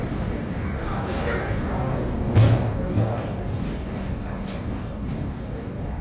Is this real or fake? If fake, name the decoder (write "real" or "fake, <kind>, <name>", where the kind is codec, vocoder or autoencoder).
fake, codec, DAC